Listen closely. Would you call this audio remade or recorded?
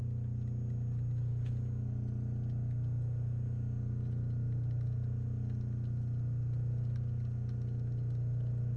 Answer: recorded